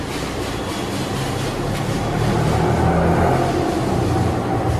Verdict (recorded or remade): recorded